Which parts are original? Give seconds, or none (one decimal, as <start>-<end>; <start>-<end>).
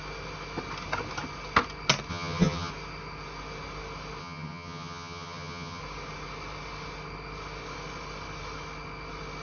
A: 0.0-2.1; 2.7-4.2; 5.8-9.4